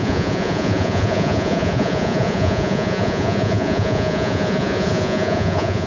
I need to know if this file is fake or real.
fake